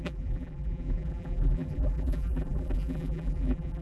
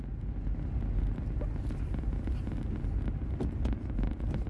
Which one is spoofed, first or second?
first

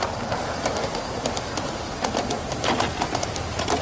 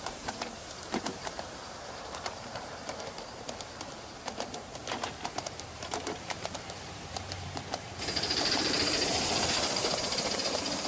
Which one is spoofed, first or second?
second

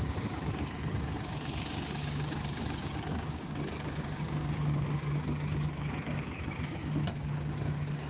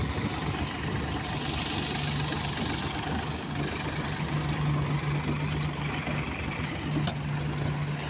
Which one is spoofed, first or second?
first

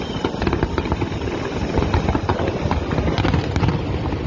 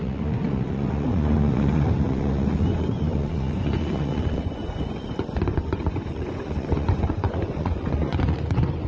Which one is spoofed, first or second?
second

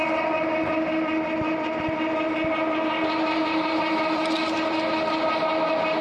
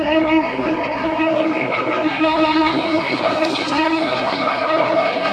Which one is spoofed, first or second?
second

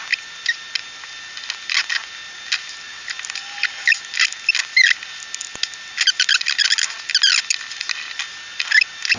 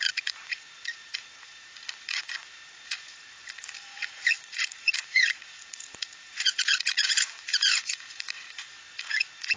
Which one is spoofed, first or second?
second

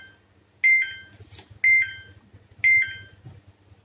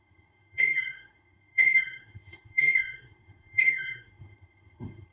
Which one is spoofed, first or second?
second